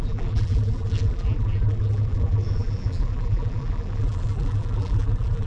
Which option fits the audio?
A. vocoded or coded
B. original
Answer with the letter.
A